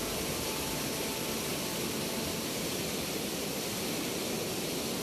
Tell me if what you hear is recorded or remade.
remade